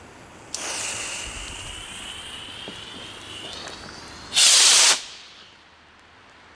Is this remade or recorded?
recorded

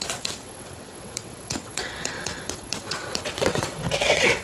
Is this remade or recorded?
remade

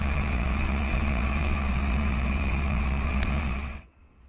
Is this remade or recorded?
remade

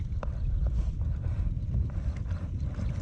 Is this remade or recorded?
recorded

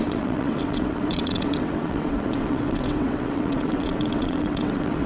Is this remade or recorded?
remade